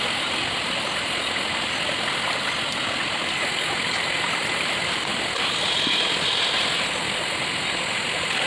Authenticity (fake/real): real